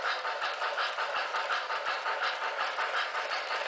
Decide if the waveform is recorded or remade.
recorded